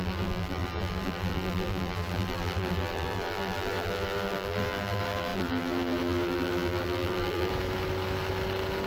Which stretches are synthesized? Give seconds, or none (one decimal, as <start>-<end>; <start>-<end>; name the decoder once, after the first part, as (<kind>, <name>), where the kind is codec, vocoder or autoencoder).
0.0-7.5 (vocoder, BigVGAN v2)